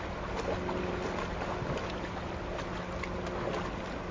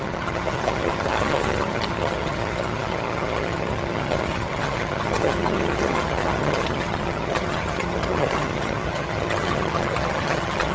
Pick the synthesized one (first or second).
second